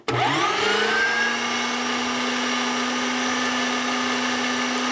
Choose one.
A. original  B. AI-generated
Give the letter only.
A